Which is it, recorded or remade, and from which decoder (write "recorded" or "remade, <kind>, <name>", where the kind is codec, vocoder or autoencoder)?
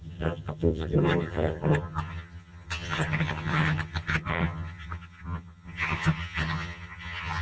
remade, vocoder, HiFi-GAN